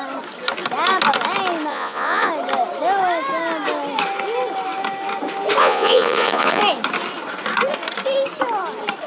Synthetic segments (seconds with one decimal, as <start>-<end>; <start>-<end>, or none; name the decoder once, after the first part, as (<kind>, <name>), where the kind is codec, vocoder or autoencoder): 1.7-2.3 (vocoder, Vocos); 5.6-6.6